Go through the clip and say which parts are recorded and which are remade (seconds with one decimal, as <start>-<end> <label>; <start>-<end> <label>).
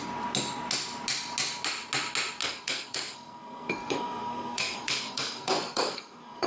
0.0-2.4 recorded; 2.4-6.5 remade